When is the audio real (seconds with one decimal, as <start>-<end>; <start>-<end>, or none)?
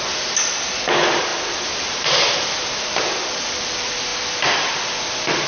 0.0-1.3; 2.9-5.5